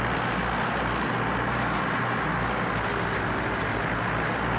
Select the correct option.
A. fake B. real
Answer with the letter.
B